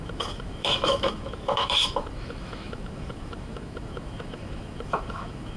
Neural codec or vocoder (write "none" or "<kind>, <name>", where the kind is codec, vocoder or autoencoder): autoencoder, DAC-VAE